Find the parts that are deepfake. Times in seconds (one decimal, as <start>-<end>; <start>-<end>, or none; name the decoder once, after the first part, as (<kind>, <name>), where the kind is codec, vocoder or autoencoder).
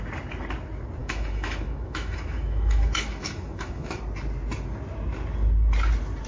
1.0-4.0 (autoencoder, DAC-VAE)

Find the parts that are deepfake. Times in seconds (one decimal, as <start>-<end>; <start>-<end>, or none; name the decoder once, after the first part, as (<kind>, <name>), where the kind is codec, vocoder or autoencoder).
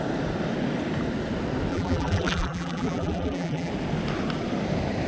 1.7-3.7 (vocoder, BigVGAN v2)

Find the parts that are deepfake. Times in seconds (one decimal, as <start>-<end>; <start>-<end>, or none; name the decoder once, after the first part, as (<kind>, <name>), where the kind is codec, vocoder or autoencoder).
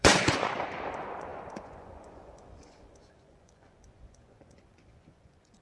0.0-5.6 (vocoder, Vocos)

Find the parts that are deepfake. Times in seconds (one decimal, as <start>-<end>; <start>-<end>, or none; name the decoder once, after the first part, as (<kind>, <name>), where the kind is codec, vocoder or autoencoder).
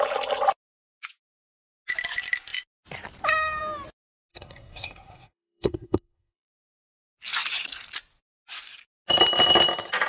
4.3-6.6 (codec, SNAC)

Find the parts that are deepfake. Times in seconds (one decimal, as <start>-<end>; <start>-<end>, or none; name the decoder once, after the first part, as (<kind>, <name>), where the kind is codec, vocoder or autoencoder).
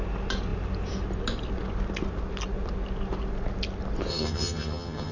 4.1-5.1 (vocoder, HiFi-GAN)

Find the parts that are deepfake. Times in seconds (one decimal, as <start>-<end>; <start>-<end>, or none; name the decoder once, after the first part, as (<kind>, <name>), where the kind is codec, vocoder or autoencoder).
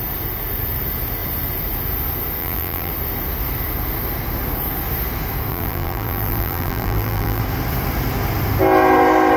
2.4-2.9 (vocoder, BigVGAN v2); 5.5-7.4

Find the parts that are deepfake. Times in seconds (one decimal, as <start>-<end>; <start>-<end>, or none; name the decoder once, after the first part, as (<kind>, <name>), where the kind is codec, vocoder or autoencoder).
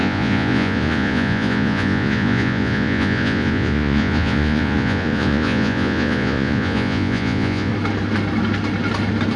0.0-7.7 (vocoder, Vocos)